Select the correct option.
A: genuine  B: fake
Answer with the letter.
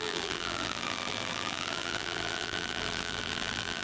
B